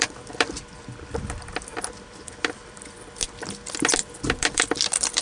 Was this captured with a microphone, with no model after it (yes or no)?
no